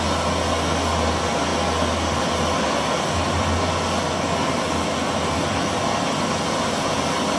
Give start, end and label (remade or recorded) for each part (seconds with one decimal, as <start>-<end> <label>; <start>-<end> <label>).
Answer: 0.0-7.4 recorded